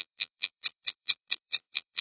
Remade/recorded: remade